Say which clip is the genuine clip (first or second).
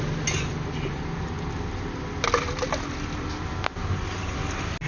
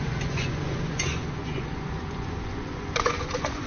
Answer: first